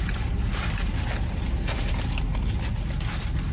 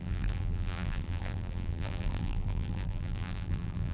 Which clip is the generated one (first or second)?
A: second